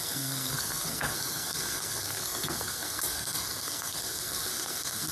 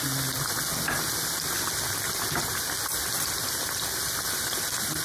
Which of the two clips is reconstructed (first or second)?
first